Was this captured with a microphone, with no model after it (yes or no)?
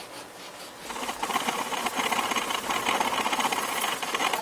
yes